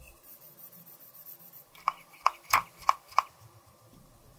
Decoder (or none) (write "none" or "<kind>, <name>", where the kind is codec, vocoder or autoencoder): none